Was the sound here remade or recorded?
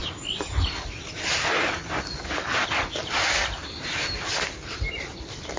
recorded